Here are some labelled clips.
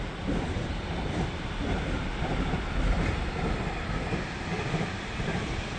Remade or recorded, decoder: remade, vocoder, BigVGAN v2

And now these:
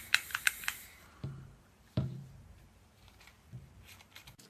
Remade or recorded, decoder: remade, vocoder, BigVGAN v2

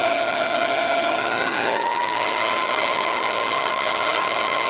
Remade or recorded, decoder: remade, vocoder, HiFi-GAN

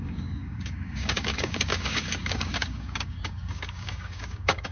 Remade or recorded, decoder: remade, codec, DAC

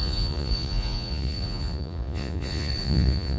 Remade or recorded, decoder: remade, vocoder, Vocos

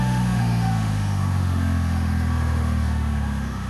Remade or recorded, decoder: remade, autoencoder, DAC-VAE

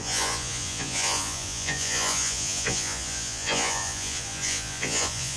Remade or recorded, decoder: remade, vocoder, Vocos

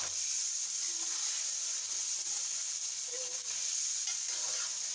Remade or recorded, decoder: recorded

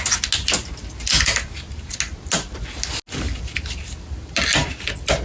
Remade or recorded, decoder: recorded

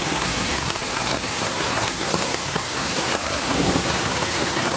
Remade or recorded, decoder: remade, codec, SNAC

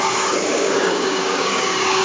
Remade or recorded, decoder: remade, codec, DAC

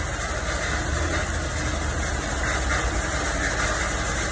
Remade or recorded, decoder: recorded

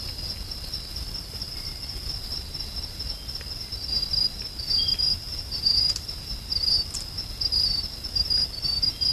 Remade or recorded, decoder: recorded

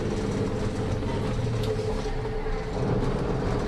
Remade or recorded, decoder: recorded